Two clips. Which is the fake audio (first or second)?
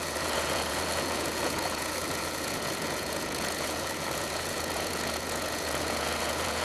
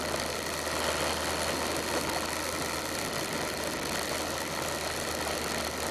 first